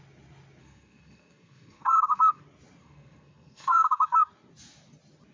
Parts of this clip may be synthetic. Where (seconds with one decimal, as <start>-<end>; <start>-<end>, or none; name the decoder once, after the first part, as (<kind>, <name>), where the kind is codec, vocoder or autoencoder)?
0.6-2.4 (codec, SNAC); 2.8-4.3